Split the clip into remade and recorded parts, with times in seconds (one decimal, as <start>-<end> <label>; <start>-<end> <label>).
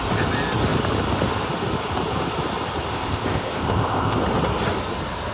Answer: 0.0-2.9 recorded; 2.9-4.2 remade; 4.2-5.3 recorded